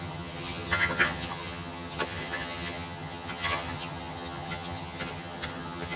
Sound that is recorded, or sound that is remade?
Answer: remade